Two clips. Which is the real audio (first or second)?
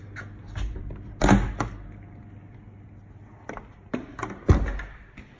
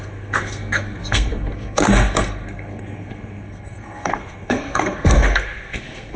first